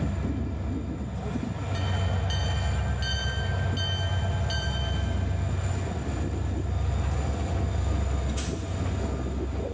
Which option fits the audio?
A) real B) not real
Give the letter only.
A